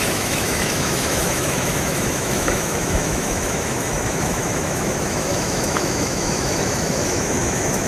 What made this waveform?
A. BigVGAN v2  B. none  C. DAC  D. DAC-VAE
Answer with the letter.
D